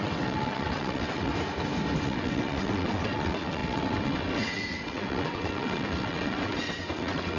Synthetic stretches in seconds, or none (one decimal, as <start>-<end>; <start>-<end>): 0.0-1.3; 2.0-7.4